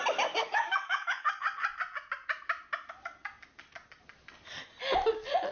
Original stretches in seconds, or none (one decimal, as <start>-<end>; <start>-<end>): 0.0-0.4; 1.3-5.5

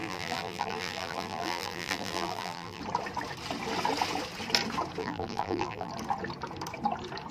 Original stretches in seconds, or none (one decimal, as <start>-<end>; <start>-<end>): 2.8-5.0; 5.9-7.3

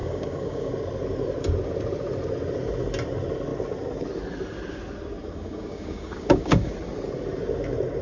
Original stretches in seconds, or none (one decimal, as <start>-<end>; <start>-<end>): 0.7-5.2; 6.7-8.0

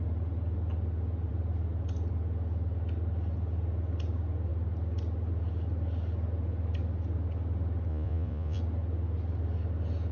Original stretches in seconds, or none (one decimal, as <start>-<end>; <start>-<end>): 0.0-7.9; 8.6-10.1

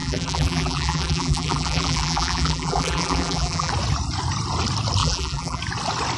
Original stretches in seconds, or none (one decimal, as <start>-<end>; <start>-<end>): 3.7-5.0; 5.6-6.2

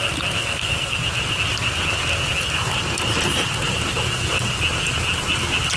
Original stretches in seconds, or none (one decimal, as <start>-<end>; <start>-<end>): 0.0-0.4; 1.0-5.8

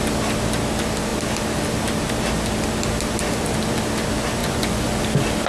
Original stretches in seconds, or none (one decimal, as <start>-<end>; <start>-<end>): 0.0-4.4; 5.0-5.5